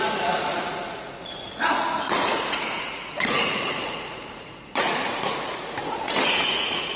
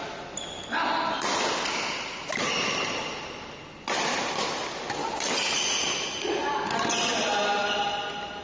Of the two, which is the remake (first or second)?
first